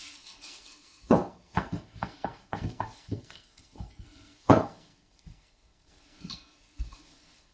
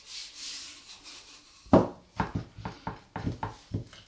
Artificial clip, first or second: first